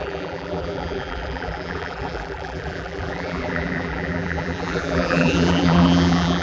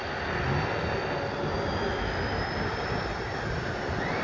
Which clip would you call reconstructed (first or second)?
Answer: first